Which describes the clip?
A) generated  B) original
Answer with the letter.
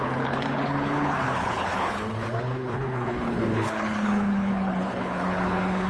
A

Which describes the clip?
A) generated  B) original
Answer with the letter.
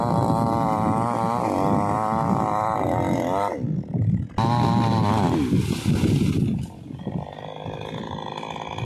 B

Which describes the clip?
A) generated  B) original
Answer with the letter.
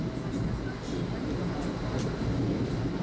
B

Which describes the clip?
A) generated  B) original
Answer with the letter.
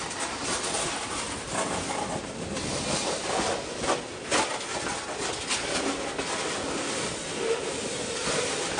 B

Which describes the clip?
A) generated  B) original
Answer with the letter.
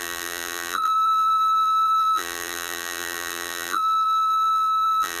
A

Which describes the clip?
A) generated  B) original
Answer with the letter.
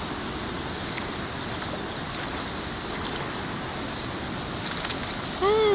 B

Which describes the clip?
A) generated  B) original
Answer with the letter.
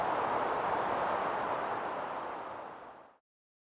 B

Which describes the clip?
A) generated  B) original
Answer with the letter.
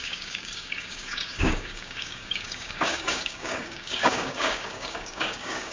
A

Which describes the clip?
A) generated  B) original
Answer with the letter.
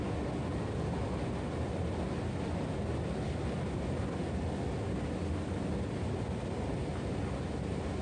B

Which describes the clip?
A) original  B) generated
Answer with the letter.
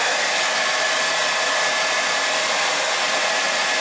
A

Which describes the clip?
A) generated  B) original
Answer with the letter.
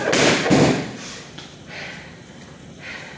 A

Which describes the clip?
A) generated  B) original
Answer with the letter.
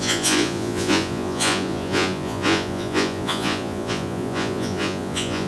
A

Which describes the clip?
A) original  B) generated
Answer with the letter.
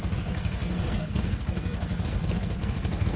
B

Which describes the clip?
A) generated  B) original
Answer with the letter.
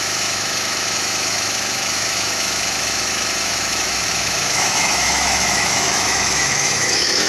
A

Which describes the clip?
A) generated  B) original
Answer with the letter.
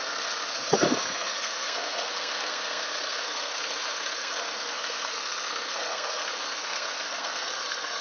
A